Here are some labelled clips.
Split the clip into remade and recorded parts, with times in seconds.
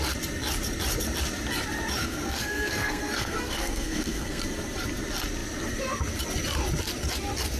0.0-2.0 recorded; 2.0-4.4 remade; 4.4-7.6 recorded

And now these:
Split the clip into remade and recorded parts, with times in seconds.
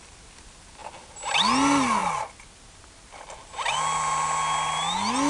0.0-5.3 recorded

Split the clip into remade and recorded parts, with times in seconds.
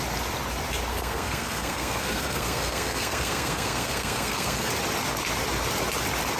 0.0-0.9 recorded; 0.9-4.7 remade; 4.7-6.4 recorded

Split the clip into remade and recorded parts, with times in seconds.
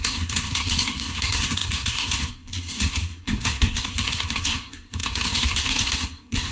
0.0-6.5 remade